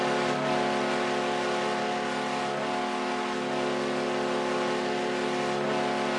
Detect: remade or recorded recorded